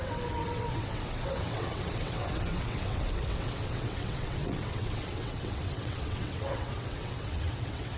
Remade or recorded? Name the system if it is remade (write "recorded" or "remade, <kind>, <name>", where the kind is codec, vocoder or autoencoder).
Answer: remade, vocoder, WaveNeXt